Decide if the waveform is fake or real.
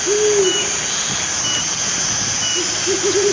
real